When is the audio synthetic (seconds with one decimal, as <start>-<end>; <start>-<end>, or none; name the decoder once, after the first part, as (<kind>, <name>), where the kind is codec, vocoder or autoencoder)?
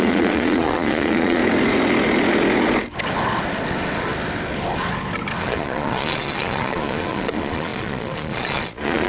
0.0-1.4 (vocoder, Vocos); 5.4-9.1